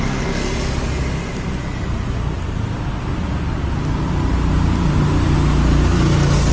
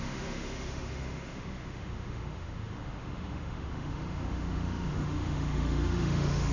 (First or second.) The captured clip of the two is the first